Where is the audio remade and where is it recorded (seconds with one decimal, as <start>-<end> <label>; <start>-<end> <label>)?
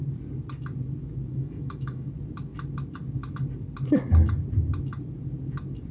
0.0-1.3 recorded; 1.3-2.1 remade; 2.1-5.9 recorded